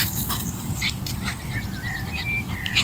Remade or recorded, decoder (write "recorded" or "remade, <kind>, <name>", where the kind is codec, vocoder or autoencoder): recorded